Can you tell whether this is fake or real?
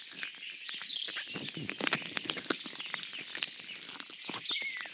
real